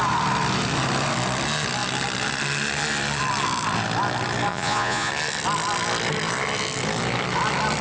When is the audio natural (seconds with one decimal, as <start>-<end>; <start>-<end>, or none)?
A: 0.0-4.5; 5.1-7.8